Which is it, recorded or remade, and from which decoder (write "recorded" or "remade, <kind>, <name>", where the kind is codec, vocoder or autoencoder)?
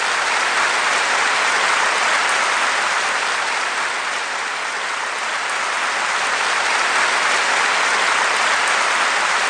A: recorded